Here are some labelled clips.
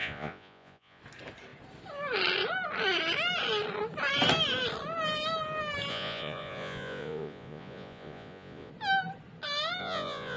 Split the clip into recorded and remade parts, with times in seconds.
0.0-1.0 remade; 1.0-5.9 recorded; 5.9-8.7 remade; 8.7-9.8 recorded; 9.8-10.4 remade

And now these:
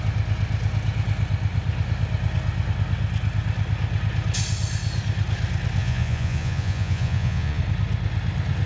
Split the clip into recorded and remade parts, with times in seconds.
0.0-5.8 recorded; 5.8-7.6 remade; 7.6-8.7 recorded

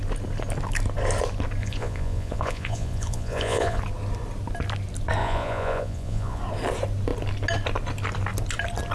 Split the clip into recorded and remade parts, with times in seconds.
0.0-1.6 recorded; 1.6-3.8 remade; 3.8-5.2 recorded; 5.2-6.4 remade; 6.4-8.9 recorded

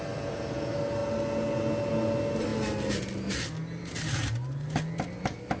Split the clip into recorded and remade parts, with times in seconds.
0.0-5.6 recorded